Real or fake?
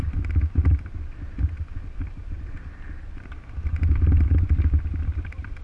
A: real